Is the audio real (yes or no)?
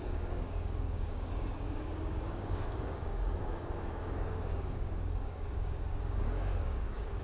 no